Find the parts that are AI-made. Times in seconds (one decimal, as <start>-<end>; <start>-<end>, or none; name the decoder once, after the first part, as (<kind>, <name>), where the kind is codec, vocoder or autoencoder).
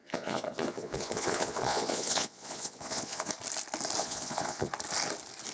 0.0-3.3 (vocoder, Vocos); 4.0-4.7